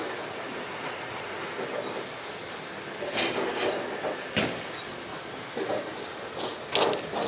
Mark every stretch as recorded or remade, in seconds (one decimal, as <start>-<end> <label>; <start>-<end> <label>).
0.0-7.3 recorded